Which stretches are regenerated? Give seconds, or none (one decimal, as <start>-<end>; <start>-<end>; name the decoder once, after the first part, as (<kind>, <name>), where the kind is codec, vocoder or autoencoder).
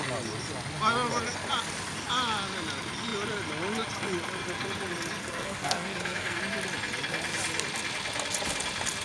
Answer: 5.2-6.4 (codec, SNAC)